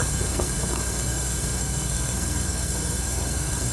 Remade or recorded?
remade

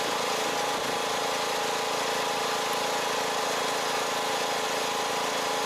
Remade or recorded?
recorded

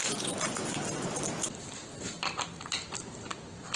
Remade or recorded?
recorded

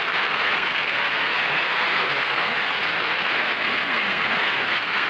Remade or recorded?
remade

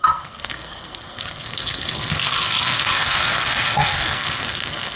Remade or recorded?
remade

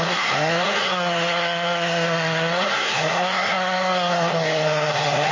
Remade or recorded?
remade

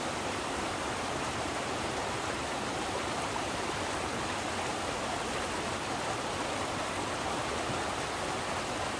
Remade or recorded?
recorded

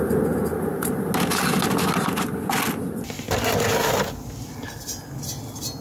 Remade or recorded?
recorded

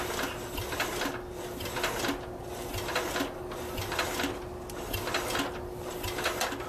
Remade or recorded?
recorded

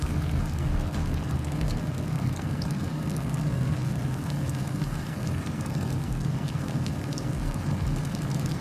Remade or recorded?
remade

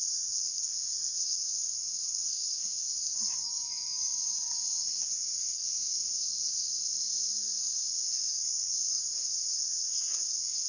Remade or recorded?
remade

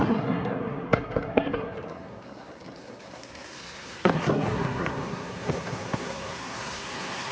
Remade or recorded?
remade